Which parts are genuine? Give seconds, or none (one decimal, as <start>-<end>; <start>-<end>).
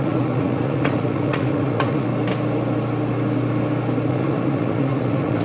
2.1-4.1